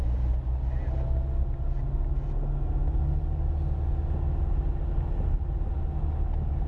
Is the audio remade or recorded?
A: recorded